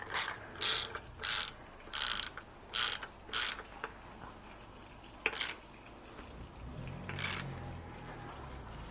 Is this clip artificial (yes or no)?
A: no